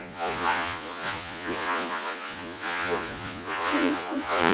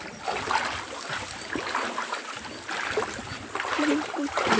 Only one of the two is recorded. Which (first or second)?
second